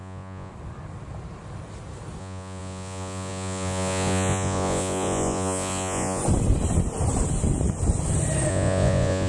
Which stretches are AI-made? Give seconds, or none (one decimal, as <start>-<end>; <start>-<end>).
0.0-0.5; 2.2-6.2; 8.5-9.3